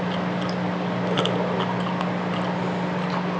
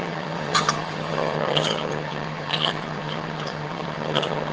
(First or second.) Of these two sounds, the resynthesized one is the second